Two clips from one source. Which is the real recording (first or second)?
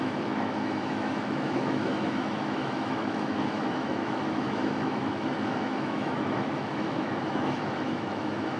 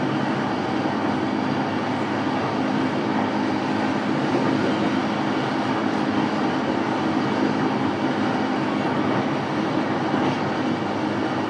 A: second